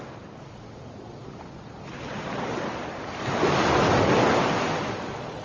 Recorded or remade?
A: recorded